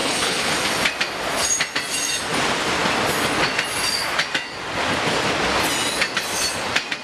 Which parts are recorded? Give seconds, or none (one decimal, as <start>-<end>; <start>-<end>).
0.5-7.0